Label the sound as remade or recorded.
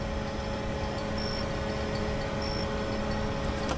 recorded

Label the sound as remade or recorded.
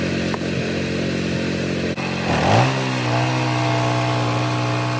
recorded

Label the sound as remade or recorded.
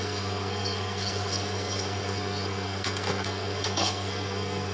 remade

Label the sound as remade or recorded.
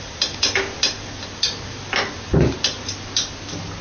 recorded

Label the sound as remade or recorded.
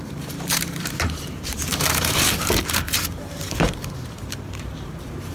remade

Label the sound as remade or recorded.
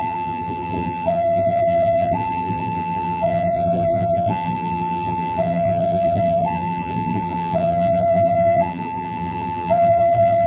remade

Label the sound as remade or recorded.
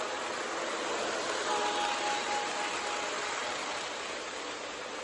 recorded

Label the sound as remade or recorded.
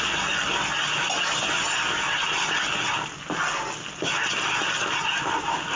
recorded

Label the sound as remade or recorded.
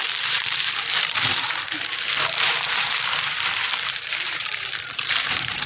remade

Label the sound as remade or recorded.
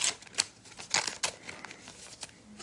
recorded